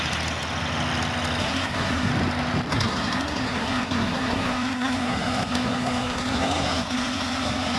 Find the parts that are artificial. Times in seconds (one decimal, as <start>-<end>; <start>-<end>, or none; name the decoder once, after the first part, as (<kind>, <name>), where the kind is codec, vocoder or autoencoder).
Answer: 1.4-2.1 (codec, SNAC); 2.7-7.8